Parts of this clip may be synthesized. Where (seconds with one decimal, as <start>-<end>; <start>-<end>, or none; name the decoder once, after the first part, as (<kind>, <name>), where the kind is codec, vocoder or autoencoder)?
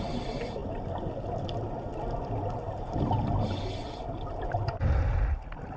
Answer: none